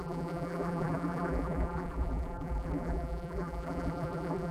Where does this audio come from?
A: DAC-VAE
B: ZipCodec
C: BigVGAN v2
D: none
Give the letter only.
C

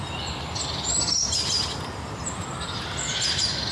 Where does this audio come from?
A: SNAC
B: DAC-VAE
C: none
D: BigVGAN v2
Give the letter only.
C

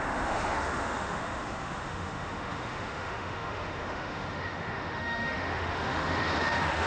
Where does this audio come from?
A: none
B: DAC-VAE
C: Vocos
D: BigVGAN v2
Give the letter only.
B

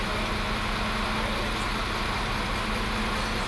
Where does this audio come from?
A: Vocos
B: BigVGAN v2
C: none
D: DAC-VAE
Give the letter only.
C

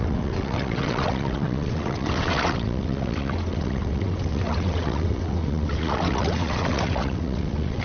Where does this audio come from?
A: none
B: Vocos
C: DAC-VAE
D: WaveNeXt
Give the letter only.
D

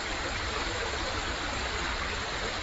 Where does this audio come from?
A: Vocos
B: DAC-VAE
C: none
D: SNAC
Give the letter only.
C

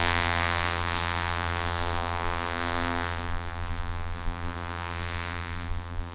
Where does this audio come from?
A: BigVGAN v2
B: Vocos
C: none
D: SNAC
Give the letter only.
A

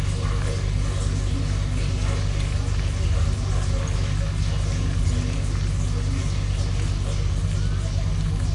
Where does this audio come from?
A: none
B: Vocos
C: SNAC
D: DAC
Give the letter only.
A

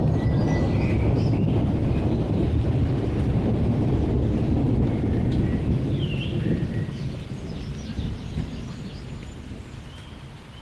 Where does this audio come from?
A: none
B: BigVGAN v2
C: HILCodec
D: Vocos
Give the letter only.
A